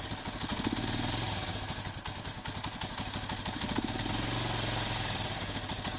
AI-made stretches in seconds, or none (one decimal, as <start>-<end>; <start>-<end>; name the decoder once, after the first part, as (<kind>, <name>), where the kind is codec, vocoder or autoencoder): none